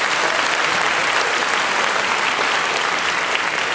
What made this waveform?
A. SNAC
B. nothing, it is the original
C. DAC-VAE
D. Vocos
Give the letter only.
B